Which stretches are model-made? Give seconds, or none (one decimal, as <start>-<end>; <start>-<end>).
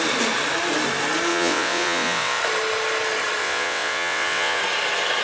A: 1.3-2.4; 3.4-4.6